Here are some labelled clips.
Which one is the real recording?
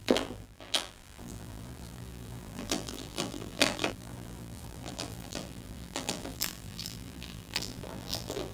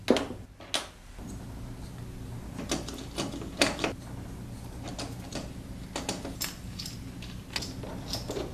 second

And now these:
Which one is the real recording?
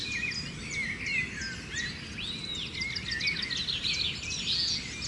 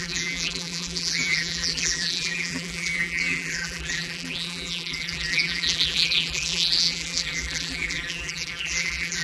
first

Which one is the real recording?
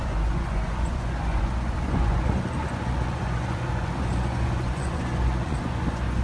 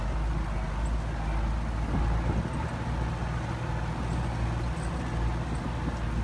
second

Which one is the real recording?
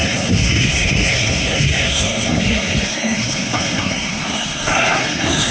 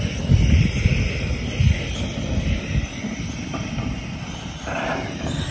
second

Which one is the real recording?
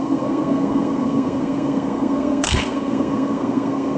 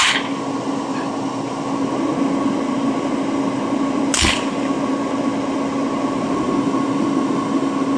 second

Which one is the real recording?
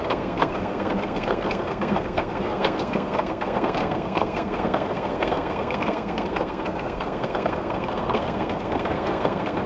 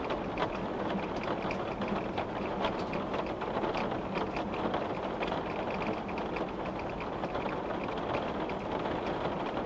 second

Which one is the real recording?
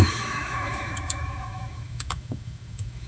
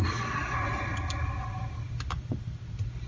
second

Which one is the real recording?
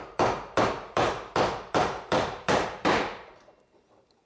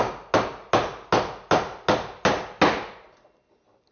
second